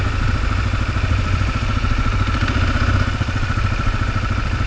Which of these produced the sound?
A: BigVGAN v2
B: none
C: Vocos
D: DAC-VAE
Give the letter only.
A